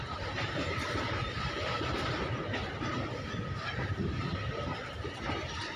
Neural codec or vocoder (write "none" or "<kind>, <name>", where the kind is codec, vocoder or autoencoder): vocoder, BigVGAN v2